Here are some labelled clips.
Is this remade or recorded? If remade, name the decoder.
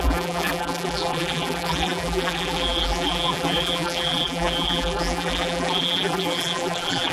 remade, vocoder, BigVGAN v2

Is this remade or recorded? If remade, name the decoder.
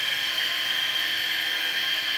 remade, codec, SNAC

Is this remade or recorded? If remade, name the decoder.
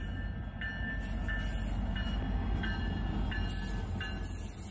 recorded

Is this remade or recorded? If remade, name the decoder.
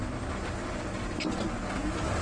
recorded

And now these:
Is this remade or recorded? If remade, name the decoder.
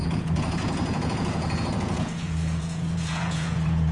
remade, vocoder, Vocos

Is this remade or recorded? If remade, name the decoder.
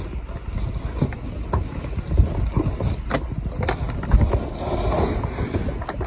recorded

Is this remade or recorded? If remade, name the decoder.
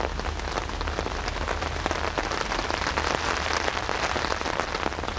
recorded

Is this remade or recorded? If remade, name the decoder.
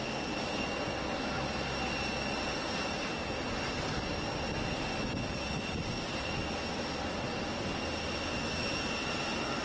recorded